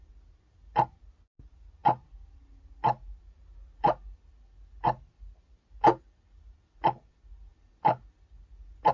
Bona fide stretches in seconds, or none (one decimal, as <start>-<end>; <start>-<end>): 0.0-8.9